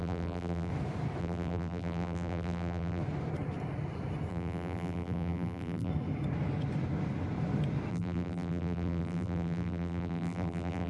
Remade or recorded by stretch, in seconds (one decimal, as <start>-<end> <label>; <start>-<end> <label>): 0.0-0.7 remade; 0.7-1.2 recorded; 1.2-3.0 remade; 3.0-4.3 recorded; 4.3-5.9 remade; 5.9-7.9 recorded; 7.9-10.9 remade